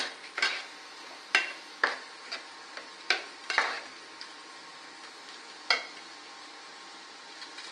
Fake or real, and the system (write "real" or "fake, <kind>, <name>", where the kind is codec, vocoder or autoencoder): real